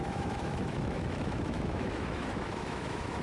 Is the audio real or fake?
fake